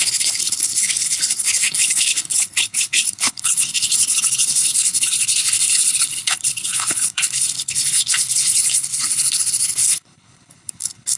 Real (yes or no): no